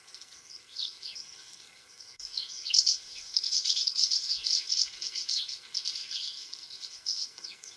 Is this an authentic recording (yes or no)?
no